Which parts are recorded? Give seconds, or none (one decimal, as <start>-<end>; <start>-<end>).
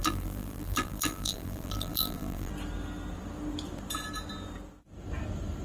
2.5-5.6